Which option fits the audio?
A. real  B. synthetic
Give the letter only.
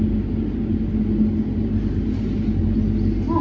A